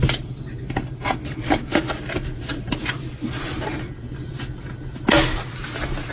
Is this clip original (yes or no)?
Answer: yes